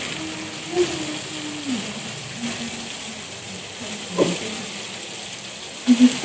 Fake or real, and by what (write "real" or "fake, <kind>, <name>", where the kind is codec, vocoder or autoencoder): real